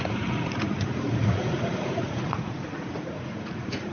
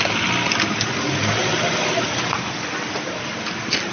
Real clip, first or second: second